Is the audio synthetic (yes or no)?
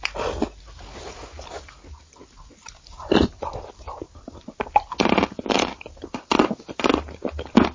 no